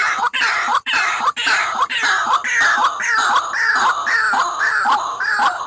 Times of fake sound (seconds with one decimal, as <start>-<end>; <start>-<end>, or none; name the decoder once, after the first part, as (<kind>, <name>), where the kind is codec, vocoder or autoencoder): 0.0-1.1 (vocoder, BigVGAN v2)